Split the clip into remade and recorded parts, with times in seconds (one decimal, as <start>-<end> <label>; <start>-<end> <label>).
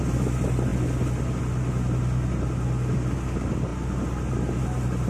0.0-5.1 recorded